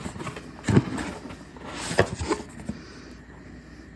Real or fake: real